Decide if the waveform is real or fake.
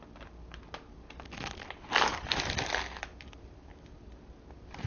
real